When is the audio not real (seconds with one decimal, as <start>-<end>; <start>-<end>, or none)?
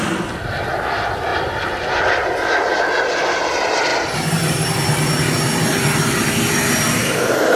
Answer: none